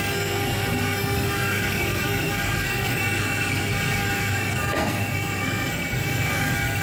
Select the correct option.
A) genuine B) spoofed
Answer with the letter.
B